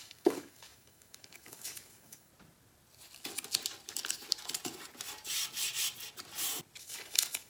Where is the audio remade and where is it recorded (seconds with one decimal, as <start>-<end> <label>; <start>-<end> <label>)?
0.0-2.3 remade; 2.3-6.8 recorded; 6.8-7.5 remade